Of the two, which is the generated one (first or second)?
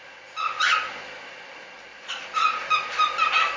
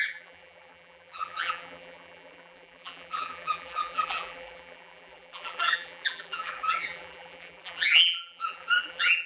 second